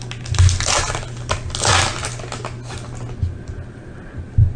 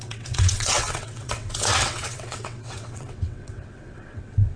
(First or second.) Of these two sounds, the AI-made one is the second